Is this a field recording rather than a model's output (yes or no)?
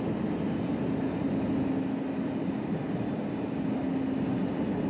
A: yes